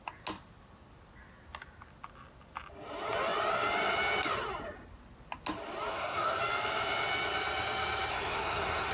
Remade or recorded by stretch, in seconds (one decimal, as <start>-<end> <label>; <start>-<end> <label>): 0.0-5.9 recorded; 5.9-6.4 remade; 6.4-8.1 recorded; 8.1-8.9 remade